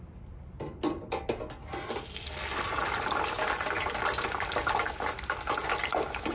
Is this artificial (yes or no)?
no